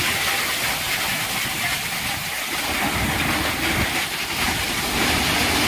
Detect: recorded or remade recorded